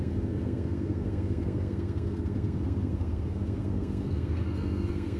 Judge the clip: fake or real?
fake